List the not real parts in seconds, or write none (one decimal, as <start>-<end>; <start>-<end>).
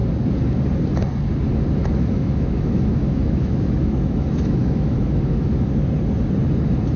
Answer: 1.8-5.7